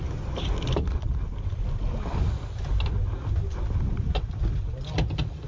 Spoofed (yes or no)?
no